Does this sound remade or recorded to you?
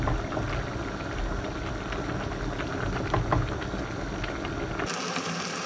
recorded